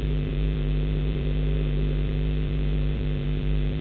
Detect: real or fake fake